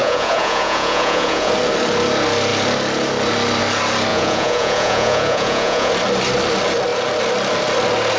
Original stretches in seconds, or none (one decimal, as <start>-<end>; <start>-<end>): 1.5-4.1; 5.9-8.2